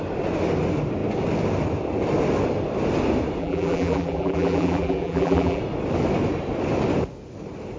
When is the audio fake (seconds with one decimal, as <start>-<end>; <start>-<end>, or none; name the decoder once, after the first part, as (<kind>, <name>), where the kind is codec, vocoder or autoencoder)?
3.4-5.6 (vocoder, BigVGAN v2)